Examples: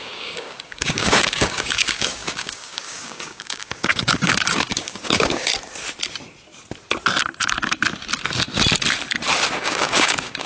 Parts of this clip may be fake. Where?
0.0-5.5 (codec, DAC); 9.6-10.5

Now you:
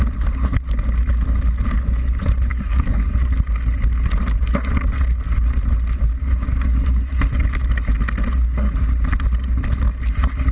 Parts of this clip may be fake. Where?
2.5-3.1 (codec, DAC)

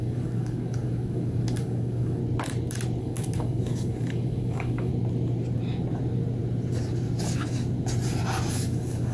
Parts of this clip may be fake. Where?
0.0-2.2 (codec, DAC); 3.0-4.9; 8.5-9.1

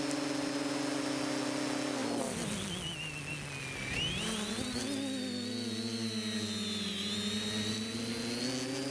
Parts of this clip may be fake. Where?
none

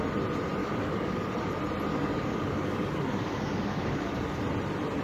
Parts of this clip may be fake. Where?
0.6-1.3 (codec, DAC); 1.9-4.4

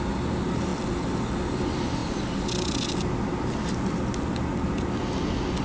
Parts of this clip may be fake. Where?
none

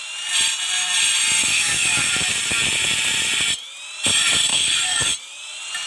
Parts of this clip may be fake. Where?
1.4-2.1 (codec, DAC); 4.5-5.1